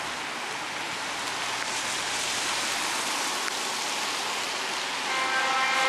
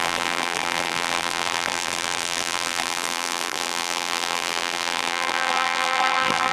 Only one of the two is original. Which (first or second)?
first